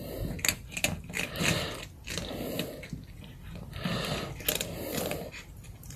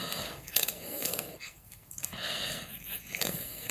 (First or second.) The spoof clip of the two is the second